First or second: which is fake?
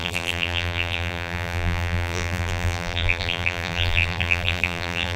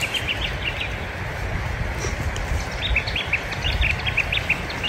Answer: first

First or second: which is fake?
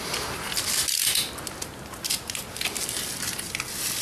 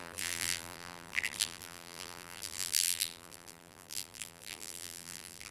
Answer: second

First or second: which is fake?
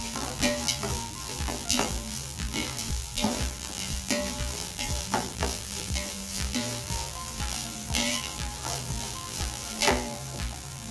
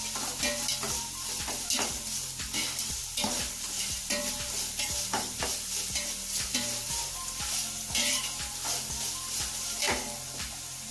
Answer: first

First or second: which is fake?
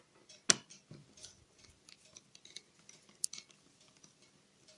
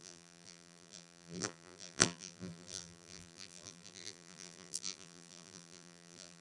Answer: second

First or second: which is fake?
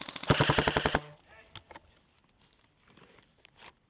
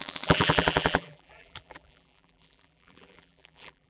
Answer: second